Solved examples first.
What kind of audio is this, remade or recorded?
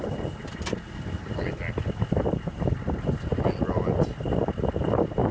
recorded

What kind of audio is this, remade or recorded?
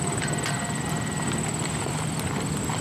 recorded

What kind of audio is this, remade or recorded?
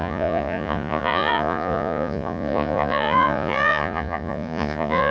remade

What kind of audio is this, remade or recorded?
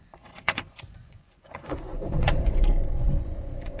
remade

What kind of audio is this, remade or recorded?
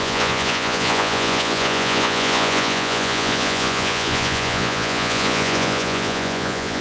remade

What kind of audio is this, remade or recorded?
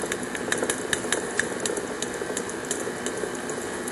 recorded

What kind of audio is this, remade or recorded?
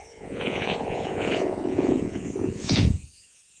remade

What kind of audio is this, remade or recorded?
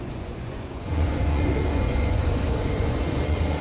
remade